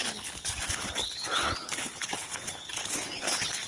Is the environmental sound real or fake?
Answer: fake